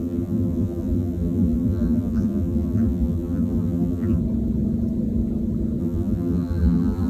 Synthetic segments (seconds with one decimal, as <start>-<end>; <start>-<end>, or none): 0.0-4.2; 5.8-7.1